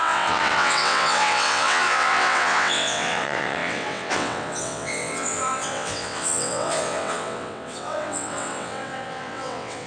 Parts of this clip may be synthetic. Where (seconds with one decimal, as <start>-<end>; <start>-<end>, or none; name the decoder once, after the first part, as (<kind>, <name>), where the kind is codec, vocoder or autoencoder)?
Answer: 0.0-9.9 (vocoder, WaveNeXt)